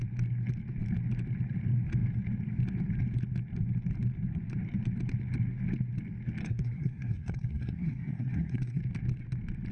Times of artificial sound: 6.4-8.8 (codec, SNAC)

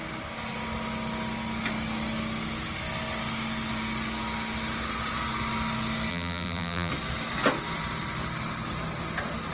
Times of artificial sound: 6.1-6.9 (vocoder, BigVGAN v2)